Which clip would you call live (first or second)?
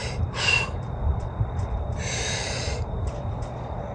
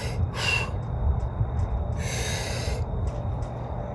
second